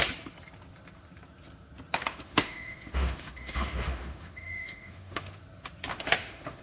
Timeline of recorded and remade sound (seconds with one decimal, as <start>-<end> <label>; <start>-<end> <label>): 0.0-2.1 recorded; 2.1-5.4 remade; 5.4-5.9 recorded; 5.9-6.6 remade